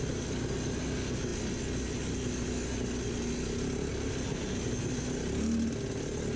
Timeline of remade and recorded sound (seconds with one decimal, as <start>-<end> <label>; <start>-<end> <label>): 0.0-6.4 recorded